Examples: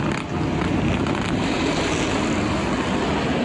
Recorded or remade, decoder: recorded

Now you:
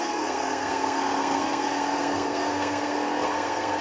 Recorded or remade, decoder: remade, codec, SNAC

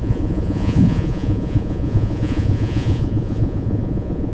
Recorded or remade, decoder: remade, vocoder, Vocos